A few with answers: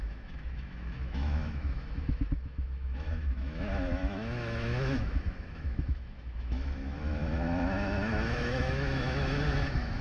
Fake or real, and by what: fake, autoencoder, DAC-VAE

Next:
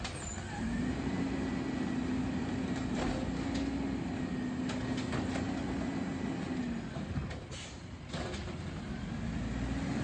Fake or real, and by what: real